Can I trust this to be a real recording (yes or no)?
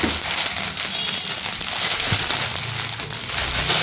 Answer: yes